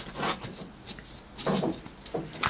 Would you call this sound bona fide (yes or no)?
yes